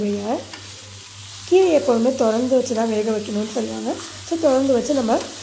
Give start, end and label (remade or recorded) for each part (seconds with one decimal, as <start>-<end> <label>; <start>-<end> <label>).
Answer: 0.0-5.4 recorded